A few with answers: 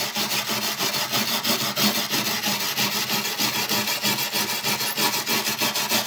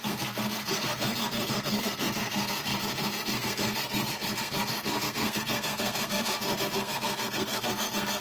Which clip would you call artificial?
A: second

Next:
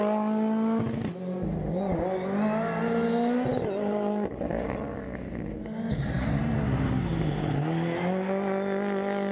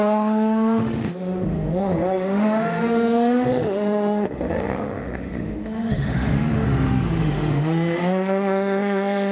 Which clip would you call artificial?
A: second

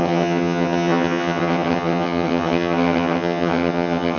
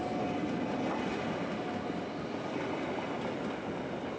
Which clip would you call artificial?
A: first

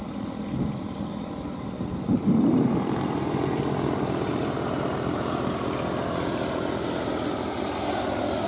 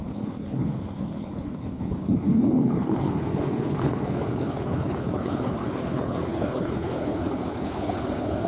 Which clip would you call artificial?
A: second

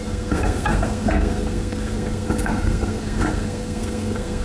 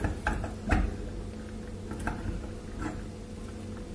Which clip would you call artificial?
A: first